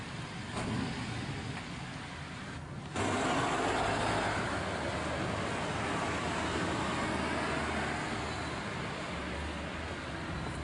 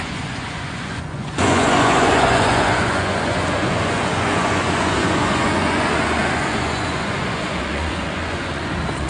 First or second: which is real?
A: first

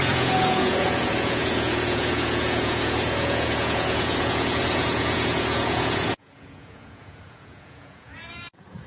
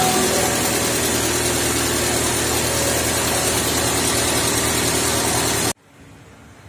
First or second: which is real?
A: second